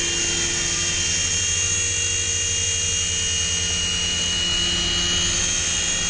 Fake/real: real